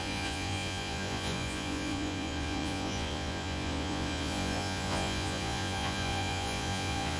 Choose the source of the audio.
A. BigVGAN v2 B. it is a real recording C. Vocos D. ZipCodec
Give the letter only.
C